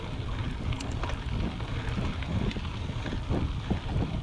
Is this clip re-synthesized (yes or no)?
no